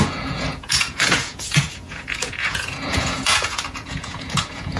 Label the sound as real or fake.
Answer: fake